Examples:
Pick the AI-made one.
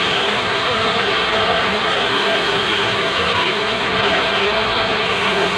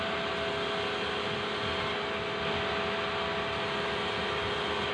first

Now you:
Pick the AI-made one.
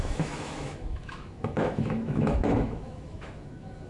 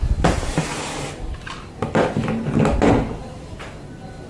first